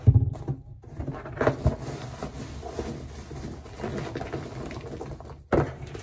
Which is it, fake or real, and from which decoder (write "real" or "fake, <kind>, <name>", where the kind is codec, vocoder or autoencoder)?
real